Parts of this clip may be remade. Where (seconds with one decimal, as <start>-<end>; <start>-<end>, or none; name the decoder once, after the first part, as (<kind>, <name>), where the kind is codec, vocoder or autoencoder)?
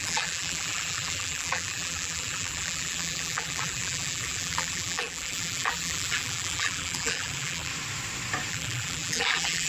0.0-7.7 (vocoder, BigVGAN v2); 8.5-9.7